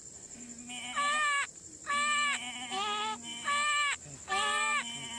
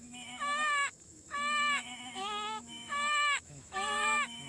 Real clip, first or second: first